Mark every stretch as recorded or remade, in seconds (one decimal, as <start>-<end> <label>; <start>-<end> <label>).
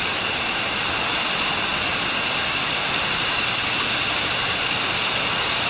0.0-5.7 recorded